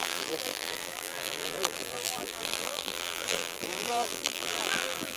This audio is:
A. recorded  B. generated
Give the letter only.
B